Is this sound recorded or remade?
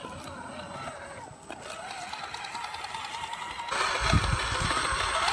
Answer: recorded